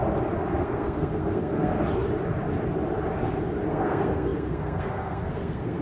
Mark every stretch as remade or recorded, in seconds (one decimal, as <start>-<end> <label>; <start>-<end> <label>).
0.0-0.6 recorded; 0.6-1.8 remade; 1.8-3.7 recorded; 3.7-5.8 remade